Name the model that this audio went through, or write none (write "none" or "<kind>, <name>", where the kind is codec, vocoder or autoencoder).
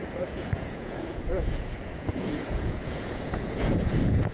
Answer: vocoder, Vocos